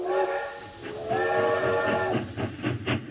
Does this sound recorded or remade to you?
recorded